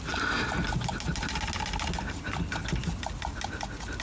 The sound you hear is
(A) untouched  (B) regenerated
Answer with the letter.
A